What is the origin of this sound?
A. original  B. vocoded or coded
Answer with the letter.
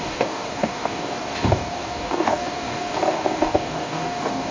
B